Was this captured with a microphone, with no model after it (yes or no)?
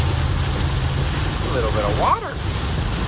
yes